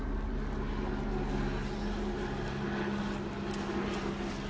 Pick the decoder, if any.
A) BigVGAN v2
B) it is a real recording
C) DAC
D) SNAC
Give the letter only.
B